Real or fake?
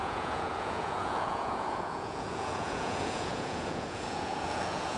fake